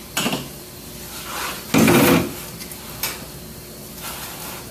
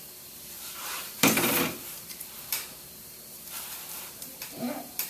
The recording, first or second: first